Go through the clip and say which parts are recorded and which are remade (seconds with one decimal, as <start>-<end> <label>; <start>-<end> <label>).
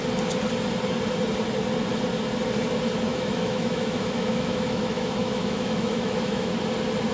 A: 0.0-3.1 recorded; 3.1-6.6 remade; 6.6-7.1 recorded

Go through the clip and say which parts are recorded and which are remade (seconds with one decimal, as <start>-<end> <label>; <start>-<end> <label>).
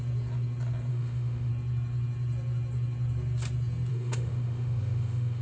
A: 0.0-0.9 recorded; 0.9-1.5 remade; 1.5-3.9 recorded; 3.9-5.4 remade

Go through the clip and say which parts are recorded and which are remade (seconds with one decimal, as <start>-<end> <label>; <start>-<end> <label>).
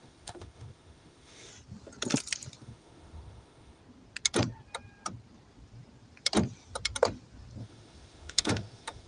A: 0.0-1.5 remade; 1.5-2.6 recorded; 2.6-3.8 remade; 3.8-7.6 recorded; 7.6-9.1 remade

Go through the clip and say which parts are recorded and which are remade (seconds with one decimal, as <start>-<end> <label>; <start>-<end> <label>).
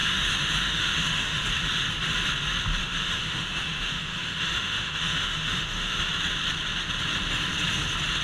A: 0.0-1.4 remade; 1.4-2.8 recorded; 2.8-6.1 remade; 6.1-8.2 recorded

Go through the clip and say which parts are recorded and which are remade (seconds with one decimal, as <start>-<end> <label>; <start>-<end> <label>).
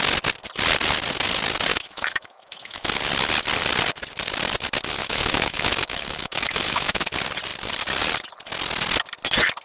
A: 0.0-1.7 recorded; 1.7-2.9 remade; 2.9-5.0 recorded; 5.0-7.1 remade; 7.1-9.6 recorded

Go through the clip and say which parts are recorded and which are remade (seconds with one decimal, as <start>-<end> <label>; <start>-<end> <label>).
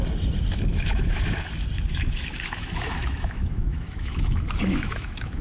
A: 0.0-0.7 recorded; 0.7-1.5 remade; 1.5-1.9 recorded; 1.9-5.4 remade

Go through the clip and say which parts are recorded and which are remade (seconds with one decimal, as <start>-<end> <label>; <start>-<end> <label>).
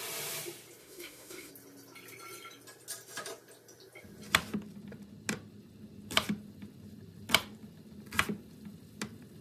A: 0.0-0.8 recorded; 0.8-1.5 remade; 1.5-9.4 recorded